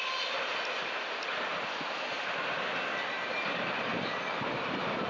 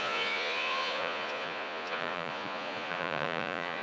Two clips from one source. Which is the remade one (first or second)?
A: second